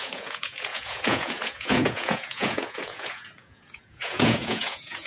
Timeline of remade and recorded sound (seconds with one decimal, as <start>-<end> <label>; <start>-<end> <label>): 0.0-5.1 remade